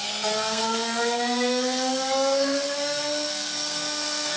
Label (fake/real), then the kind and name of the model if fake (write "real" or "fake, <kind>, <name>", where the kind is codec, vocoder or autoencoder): fake, codec, SNAC